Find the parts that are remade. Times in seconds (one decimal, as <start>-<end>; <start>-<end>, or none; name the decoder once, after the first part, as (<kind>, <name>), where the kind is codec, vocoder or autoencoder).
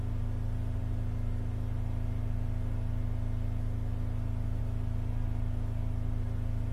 0.0-0.8 (vocoder, BigVGAN v2); 4.6-6.7